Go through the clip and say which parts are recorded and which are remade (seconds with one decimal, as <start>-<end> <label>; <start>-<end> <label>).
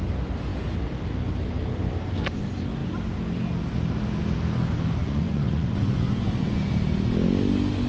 0.0-5.0 recorded; 5.0-6.7 remade; 6.7-7.9 recorded